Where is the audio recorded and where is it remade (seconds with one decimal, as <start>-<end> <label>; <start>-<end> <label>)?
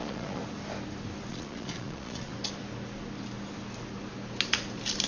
0.0-0.4 remade; 0.4-1.3 recorded; 1.3-2.3 remade; 2.3-5.1 recorded